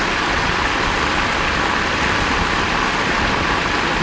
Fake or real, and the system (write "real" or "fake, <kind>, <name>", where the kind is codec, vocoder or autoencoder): fake, vocoder, BigVGAN v2